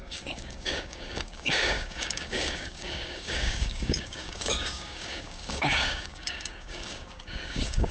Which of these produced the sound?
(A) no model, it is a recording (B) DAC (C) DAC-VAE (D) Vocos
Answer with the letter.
B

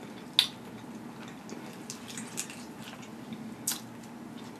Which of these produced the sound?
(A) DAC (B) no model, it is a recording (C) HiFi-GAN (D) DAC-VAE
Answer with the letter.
B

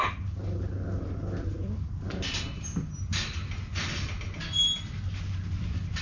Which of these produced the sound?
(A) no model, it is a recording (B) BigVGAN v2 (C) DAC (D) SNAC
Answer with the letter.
A